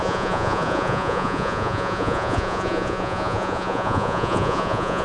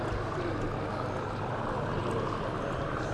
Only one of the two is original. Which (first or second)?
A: second